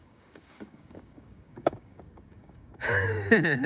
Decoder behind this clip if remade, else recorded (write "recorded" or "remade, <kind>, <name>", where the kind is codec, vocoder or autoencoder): remade, codec, DAC